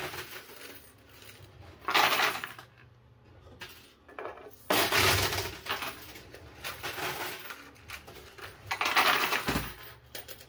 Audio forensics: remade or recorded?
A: recorded